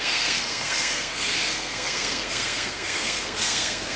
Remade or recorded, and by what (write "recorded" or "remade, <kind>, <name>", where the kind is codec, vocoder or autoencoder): remade, codec, SNAC